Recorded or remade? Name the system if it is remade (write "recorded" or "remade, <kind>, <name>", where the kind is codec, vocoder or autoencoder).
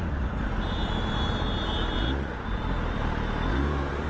recorded